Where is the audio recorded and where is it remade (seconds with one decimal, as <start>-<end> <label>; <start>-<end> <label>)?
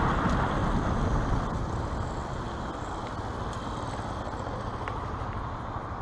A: 0.0-6.0 recorded